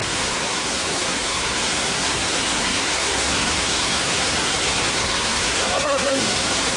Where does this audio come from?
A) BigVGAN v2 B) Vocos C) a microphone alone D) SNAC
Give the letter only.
D